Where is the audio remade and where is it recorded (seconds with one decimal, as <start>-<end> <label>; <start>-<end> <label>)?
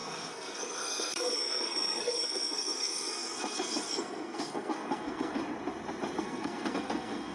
0.0-5.4 remade; 5.4-6.2 recorded; 6.2-7.3 remade